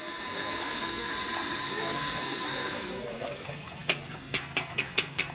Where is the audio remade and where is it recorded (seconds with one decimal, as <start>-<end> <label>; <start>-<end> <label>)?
0.0-1.1 remade; 1.1-1.7 recorded; 1.7-5.3 remade